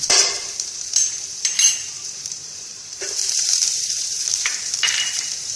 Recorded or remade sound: remade